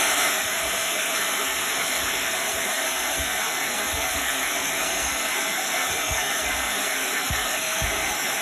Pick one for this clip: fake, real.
fake